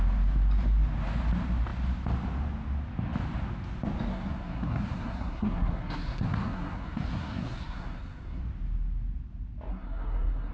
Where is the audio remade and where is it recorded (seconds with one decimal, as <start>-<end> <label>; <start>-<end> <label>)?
0.0-4.1 recorded; 4.1-8.4 remade; 8.4-9.7 recorded; 9.7-10.5 remade